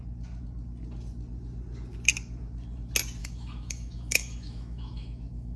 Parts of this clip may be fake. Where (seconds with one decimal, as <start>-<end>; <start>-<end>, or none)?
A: 3.2-5.6